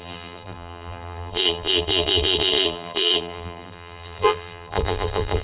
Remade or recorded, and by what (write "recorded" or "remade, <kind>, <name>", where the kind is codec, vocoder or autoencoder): remade, vocoder, BigVGAN v2